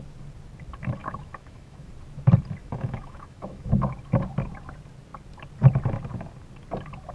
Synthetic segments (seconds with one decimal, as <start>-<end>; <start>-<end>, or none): 1.0-1.9; 2.6-3.7